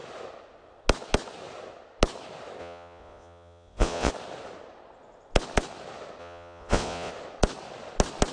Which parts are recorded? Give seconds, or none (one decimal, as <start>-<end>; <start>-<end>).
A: 0.0-2.6; 4.1-6.2; 7.1-8.3